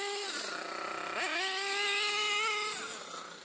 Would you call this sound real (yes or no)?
yes